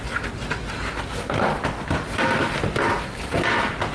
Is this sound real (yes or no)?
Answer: yes